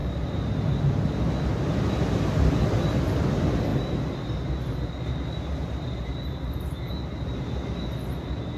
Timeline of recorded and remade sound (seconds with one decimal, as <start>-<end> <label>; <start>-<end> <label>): 0.0-0.8 remade; 0.8-8.6 recorded